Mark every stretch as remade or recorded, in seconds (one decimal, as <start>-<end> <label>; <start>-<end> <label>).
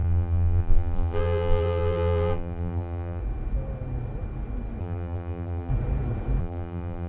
0.0-3.2 remade; 3.2-4.8 recorded; 4.8-5.7 remade; 5.7-6.4 recorded; 6.4-7.1 remade